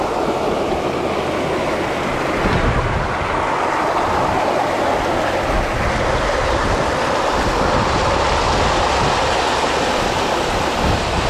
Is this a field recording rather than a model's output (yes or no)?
yes